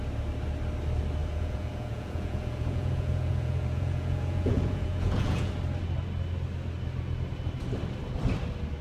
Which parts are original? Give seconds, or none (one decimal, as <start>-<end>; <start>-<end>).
0.0-1.2; 5.5-8.8